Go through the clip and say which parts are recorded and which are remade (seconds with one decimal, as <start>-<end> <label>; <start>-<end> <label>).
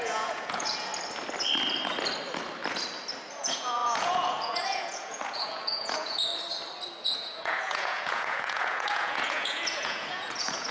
0.0-0.9 remade; 0.9-3.4 recorded; 3.4-6.3 remade; 6.3-7.0 recorded; 7.0-10.7 remade